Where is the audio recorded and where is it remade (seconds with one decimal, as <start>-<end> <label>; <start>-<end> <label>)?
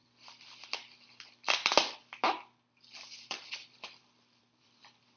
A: 0.0-2.9 recorded; 2.9-5.2 remade